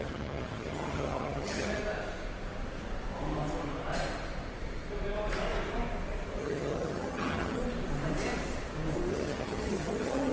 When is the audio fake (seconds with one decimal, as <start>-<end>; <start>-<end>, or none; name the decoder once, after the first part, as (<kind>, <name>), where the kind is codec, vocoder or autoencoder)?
0.0-1.8 (vocoder, HiFi-GAN); 6.4-7.6; 9.1-10.3